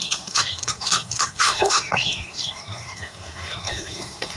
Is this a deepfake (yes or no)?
yes